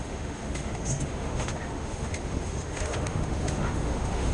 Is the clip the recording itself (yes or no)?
no